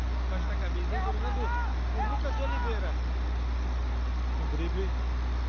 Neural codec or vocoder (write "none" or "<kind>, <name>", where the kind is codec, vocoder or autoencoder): none